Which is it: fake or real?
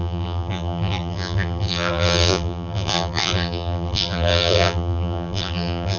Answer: fake